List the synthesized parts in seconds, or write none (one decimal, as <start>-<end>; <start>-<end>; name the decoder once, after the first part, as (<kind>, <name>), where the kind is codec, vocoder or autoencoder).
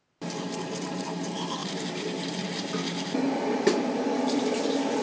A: 0.0-5.0 (vocoder, BigVGAN v2)